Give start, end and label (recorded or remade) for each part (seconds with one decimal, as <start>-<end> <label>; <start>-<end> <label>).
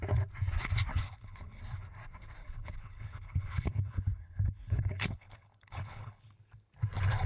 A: 0.0-0.9 recorded; 0.9-1.6 remade; 1.6-2.4 recorded; 2.4-6.3 remade; 6.3-7.3 recorded